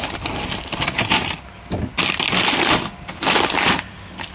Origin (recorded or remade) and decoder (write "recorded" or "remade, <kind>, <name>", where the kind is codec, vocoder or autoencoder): recorded